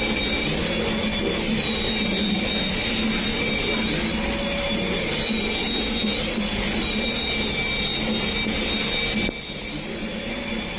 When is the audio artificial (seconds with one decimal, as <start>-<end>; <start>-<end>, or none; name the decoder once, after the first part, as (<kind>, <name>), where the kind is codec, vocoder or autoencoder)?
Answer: none